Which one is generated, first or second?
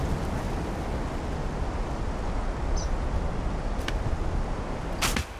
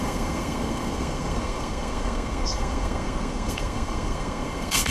second